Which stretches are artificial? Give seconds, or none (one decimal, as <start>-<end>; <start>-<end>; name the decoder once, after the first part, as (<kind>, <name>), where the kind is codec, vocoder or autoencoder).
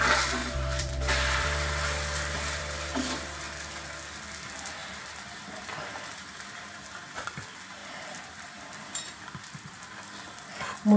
0.4-2.6 (vocoder, BigVGAN v2); 4.8-6.1; 7.8-9.2